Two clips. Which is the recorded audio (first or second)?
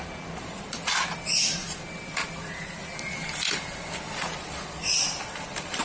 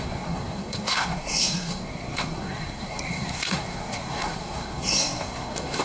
first